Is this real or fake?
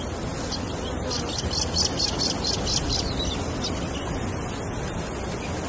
real